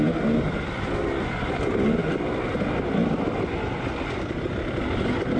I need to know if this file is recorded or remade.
recorded